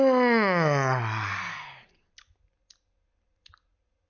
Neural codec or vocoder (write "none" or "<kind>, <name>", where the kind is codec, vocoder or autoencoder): none